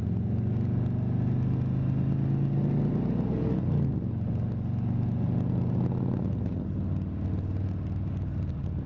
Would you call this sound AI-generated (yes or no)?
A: no